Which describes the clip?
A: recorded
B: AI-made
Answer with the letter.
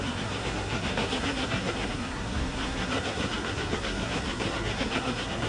B